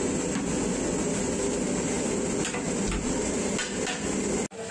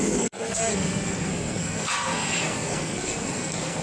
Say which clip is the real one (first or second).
first